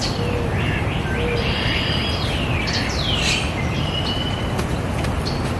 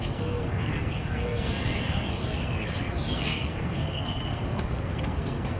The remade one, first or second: second